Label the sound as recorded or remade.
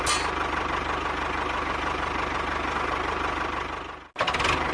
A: recorded